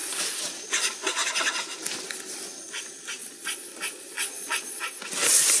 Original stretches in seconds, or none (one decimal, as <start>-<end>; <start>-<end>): 0.5-3.2; 5.0-5.6

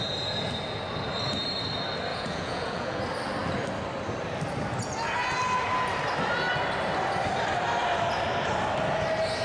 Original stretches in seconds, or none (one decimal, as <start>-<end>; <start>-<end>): 0.0-2.1; 3.0-9.4

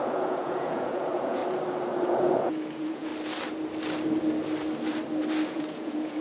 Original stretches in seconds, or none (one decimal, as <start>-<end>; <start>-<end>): 1.4-2.1; 3.1-5.5